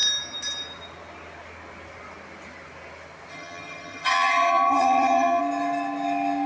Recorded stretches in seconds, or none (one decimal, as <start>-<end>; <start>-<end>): 0.0-3.3; 5.4-6.5